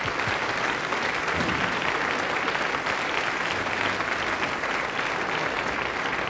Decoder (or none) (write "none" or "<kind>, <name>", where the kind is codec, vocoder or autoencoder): none